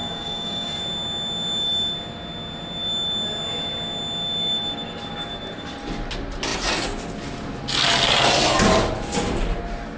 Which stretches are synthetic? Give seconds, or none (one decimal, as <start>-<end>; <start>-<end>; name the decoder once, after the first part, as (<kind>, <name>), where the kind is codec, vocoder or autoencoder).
0.0-0.8 (codec, DAC)